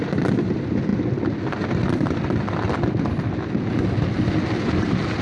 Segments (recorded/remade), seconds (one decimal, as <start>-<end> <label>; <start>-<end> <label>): 0.0-5.2 recorded